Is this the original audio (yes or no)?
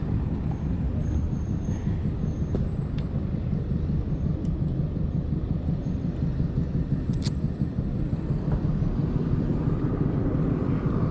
no